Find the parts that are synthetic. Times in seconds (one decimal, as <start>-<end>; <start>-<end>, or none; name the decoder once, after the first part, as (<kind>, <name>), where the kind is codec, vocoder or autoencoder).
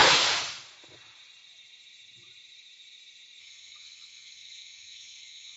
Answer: 3.4-5.6 (codec, SNAC)